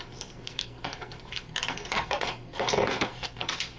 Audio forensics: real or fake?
fake